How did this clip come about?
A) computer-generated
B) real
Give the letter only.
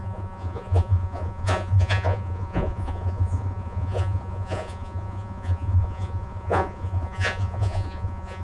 A